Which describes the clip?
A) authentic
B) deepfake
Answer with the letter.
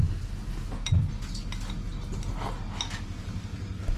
A